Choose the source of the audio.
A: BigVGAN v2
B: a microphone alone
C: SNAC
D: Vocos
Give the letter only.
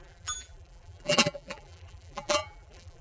A